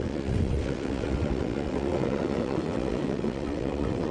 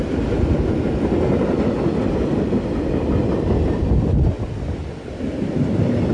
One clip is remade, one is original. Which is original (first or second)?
second